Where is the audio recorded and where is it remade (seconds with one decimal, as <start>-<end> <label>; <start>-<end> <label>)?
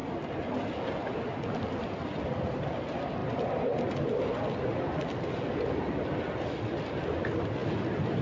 0.0-8.2 recorded